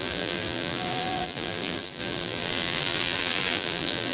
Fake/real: fake